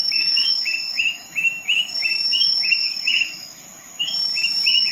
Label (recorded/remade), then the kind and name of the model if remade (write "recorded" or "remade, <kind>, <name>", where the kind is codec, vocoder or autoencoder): remade, autoencoder, DAC-VAE